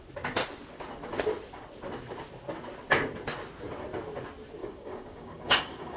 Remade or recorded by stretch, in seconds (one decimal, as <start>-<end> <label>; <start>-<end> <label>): 0.0-4.6 recorded; 4.6-6.0 remade

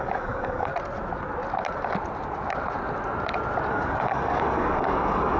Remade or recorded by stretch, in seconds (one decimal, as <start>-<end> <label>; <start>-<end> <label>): 0.0-0.7 remade; 0.7-3.7 recorded; 3.7-5.4 remade

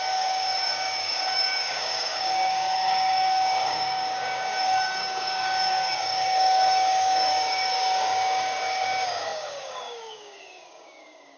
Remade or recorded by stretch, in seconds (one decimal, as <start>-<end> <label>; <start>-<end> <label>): 0.0-11.4 remade

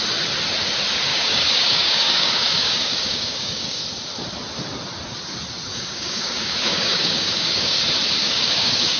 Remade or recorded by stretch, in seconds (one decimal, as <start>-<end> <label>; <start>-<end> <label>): 0.0-1.1 recorded; 1.1-3.8 remade; 3.8-5.7 recorded; 5.7-7.8 remade; 7.8-8.2 recorded; 8.2-9.0 remade